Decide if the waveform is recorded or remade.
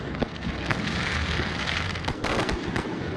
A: remade